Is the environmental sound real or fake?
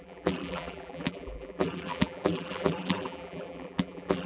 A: fake